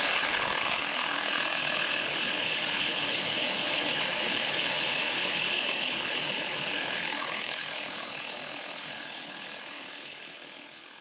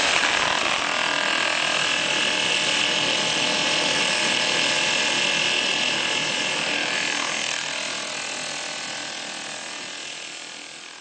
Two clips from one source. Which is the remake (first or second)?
first